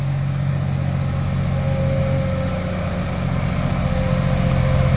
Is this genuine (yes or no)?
yes